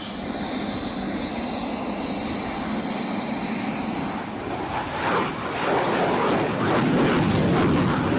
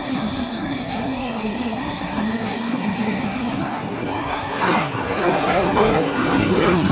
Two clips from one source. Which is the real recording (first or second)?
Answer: first